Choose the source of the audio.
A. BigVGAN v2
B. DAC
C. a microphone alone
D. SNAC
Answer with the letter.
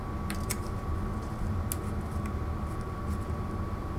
C